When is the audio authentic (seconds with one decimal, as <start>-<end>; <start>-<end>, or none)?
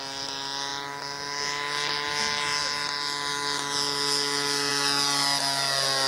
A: 0.0-6.1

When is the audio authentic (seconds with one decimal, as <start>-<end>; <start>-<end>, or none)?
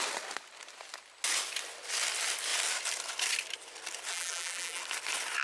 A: 0.0-4.1; 4.8-5.4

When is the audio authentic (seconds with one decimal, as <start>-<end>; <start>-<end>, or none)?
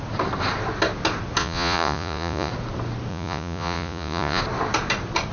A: 0.0-1.4; 2.5-3.1; 4.4-5.3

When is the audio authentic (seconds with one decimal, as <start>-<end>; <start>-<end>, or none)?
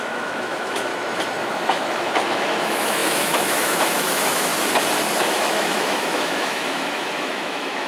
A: 0.9-1.4; 4.5-5.2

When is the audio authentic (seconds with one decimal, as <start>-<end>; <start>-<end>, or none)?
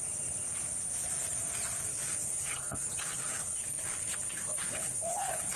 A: 0.0-1.9